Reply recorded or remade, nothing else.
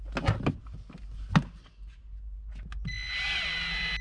recorded